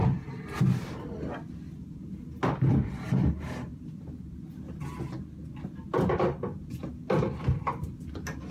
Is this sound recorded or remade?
recorded